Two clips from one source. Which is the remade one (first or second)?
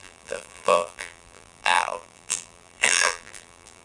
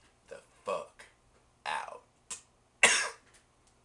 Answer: first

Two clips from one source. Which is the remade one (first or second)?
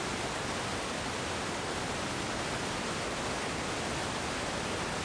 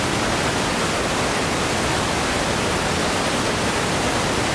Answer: second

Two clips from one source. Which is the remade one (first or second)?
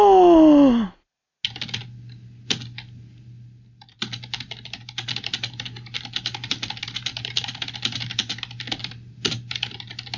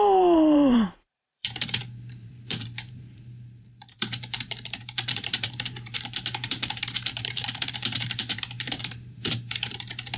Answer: second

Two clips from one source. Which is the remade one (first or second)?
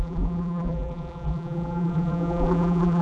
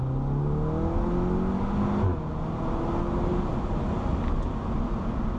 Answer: first